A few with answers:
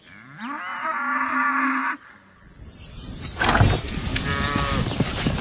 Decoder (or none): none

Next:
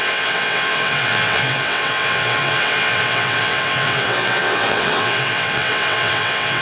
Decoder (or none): vocoder, WaveNeXt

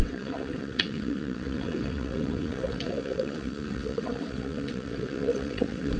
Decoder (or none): vocoder, WaveNeXt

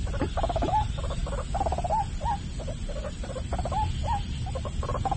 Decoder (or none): none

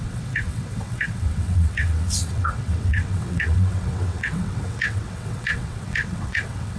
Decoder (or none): vocoder, WaveNeXt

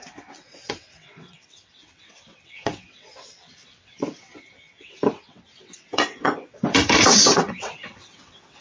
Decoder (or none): vocoder, WaveNeXt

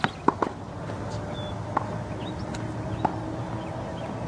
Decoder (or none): none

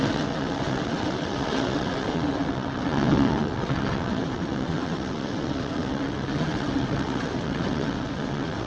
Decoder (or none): vocoder, WaveNeXt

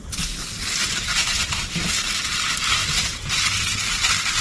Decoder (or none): none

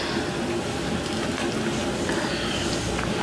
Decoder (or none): none